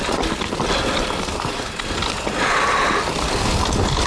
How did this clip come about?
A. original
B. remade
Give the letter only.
A